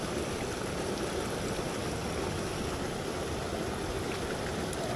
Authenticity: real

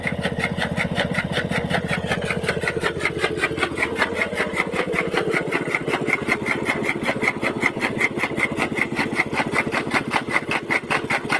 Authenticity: real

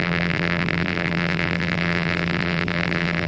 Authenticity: fake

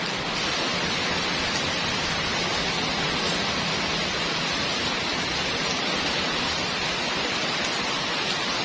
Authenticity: fake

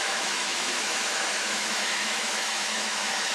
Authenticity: fake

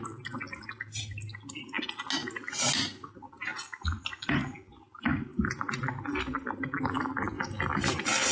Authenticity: real